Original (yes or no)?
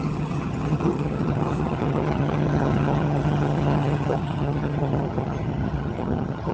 no